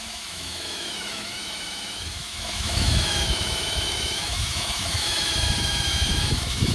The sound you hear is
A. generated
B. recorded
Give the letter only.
A